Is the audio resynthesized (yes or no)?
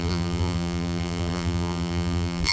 yes